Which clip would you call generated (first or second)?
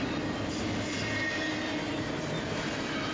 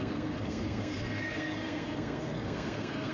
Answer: second